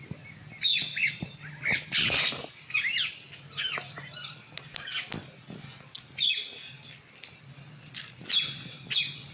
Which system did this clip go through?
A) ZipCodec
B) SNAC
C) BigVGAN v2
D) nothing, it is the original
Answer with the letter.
D